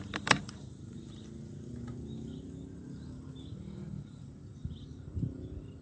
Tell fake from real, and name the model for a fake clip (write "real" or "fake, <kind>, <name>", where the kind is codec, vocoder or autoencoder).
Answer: fake, vocoder, BigVGAN v2